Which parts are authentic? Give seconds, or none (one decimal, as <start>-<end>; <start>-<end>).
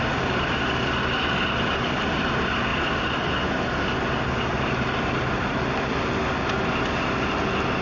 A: 0.0-7.8